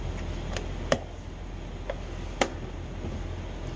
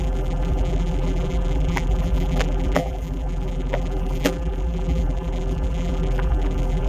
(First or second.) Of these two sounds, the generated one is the second